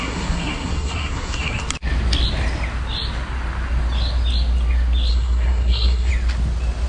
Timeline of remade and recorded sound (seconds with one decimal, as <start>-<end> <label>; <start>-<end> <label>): 0.0-1.6 remade; 1.6-5.1 recorded; 5.1-6.1 remade; 6.1-6.9 recorded